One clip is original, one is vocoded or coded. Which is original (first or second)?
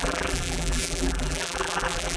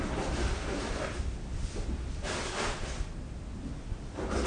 second